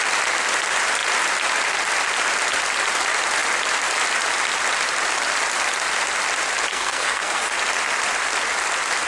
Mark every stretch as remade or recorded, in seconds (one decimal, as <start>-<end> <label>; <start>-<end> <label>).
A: 0.0-6.7 recorded; 6.7-7.5 remade; 7.5-9.1 recorded